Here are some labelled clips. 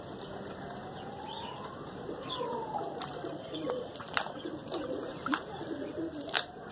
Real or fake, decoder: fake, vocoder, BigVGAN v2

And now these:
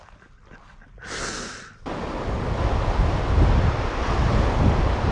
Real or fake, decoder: real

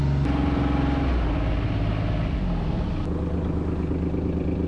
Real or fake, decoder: real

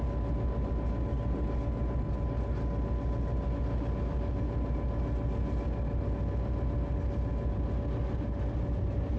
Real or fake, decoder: real